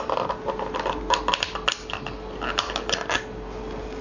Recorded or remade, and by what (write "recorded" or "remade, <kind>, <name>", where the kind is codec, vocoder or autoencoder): recorded